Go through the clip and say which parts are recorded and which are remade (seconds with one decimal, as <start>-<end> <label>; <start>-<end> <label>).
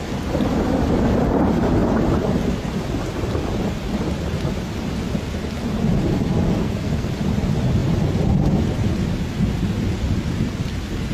0.0-6.6 recorded; 6.6-7.1 remade; 7.1-11.1 recorded